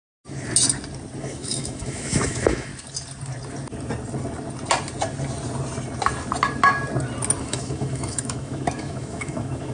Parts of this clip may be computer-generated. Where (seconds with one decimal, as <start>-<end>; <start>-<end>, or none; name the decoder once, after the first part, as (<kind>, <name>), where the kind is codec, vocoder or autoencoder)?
1.2-2.7 (autoencoder, DAC-VAE); 7.4-9.7